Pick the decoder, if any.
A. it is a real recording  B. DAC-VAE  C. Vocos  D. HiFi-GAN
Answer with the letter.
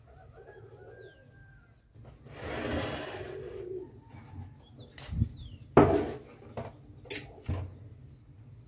A